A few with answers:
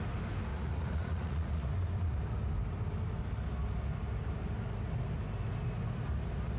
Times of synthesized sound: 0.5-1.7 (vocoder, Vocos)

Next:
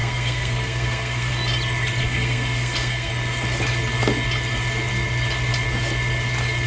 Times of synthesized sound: 0.0-1.3 (codec, SNAC); 2.0-3.1

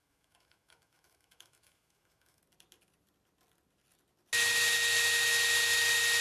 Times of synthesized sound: 0.0-2.4 (autoencoder, DAC-VAE)